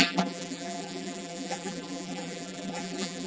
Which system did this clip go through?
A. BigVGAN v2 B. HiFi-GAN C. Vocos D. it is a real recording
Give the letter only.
A